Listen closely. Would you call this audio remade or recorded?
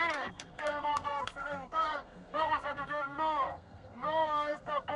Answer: remade